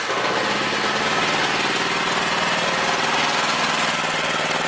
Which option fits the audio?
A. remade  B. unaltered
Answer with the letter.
B